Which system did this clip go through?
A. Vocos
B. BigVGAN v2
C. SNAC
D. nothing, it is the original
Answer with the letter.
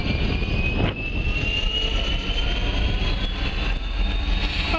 D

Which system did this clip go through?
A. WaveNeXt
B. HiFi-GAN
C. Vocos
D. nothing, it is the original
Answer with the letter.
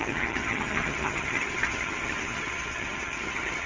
B